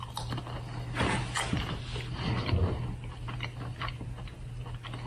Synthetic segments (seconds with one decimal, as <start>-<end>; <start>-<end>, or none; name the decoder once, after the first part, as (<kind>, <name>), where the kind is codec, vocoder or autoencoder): none